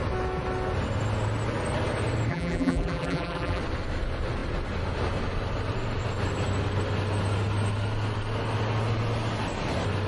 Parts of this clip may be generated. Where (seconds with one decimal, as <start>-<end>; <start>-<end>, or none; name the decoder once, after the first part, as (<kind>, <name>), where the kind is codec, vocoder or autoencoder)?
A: 2.3-3.6 (vocoder, BigVGAN v2)